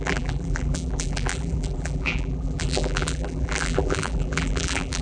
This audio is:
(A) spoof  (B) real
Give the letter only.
A